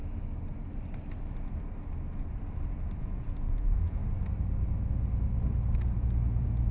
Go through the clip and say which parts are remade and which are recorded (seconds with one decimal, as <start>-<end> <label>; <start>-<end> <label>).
0.0-3.0 recorded; 3.0-4.0 remade; 4.0-6.0 recorded; 6.0-6.7 remade